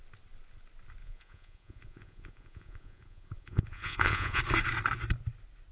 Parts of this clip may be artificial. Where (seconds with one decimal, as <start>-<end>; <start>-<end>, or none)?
1.0-4.4